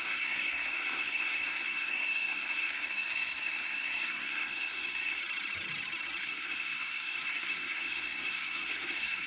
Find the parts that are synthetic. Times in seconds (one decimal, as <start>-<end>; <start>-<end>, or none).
0.0-5.2; 6.2-9.3